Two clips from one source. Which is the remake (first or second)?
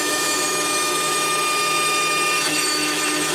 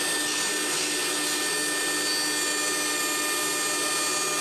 first